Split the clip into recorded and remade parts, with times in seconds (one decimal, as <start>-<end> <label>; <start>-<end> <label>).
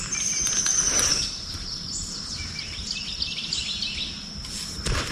0.0-5.1 recorded